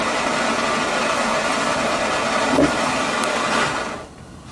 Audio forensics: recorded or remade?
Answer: recorded